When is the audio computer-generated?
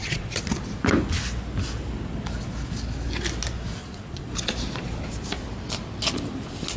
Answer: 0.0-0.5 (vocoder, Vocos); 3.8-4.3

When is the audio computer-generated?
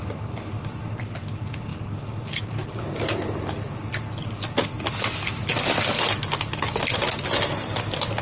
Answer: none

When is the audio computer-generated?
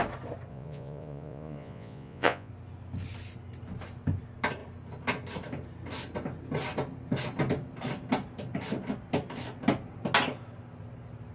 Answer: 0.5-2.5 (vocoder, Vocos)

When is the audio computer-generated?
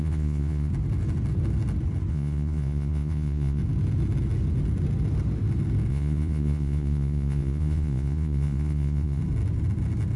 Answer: 0.0-0.7 (vocoder, Vocos); 2.1-3.6; 5.9-9.2